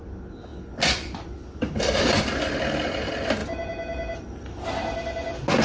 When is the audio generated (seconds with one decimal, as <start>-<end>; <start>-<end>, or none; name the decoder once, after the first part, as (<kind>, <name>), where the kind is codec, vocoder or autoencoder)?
none